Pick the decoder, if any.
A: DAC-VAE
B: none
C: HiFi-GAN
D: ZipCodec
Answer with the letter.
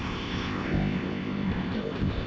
D